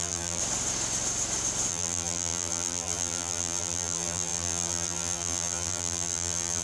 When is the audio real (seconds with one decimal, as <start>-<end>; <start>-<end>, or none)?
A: 0.4-1.7